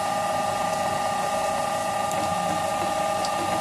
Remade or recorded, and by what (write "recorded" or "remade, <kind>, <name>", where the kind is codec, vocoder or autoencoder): recorded